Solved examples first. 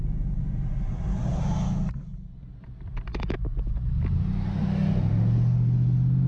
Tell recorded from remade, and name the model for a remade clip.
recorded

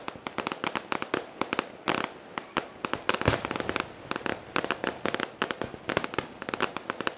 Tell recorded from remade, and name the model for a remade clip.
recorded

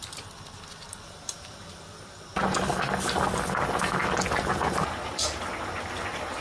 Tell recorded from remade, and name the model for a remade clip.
recorded